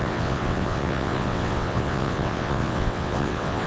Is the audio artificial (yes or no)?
yes